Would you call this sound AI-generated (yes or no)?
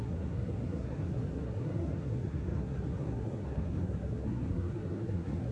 yes